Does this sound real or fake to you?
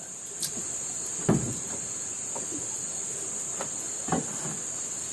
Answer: real